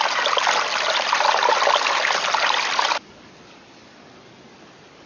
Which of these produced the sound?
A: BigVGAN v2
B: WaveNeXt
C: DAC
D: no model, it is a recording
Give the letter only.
D